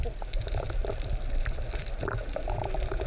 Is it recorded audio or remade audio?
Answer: remade